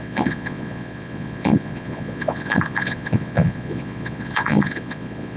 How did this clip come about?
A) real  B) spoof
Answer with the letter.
B